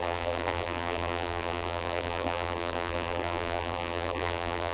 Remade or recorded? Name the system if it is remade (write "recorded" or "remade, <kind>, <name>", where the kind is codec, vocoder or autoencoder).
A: remade, vocoder, BigVGAN v2